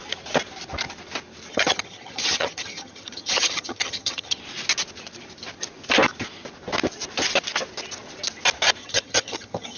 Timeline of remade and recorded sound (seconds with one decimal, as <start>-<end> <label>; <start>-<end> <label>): 0.0-1.5 recorded; 1.5-4.4 remade; 4.4-8.8 recorded; 8.8-9.8 remade